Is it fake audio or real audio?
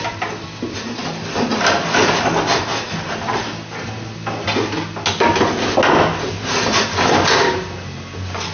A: real